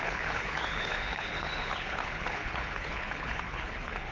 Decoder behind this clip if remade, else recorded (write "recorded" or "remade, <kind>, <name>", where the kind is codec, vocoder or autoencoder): remade, codec, HILCodec